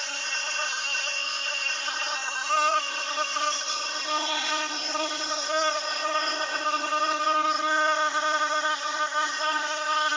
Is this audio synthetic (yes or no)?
yes